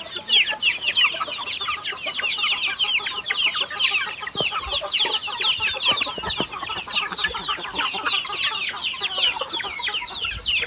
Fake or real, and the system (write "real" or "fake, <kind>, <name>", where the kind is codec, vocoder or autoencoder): real